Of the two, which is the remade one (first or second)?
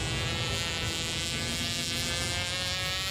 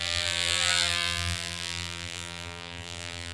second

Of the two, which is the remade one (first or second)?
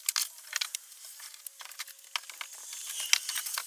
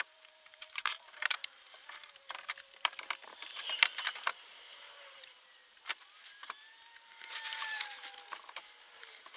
second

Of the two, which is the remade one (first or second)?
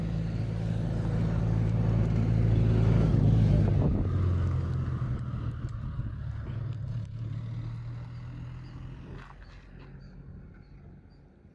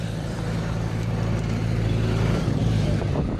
second